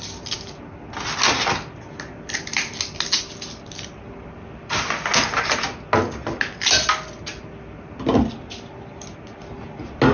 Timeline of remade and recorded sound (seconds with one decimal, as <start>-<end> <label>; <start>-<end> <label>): 0.0-10.1 recorded